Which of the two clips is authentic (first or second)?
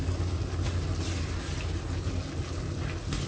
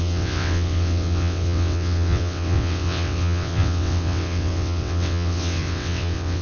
first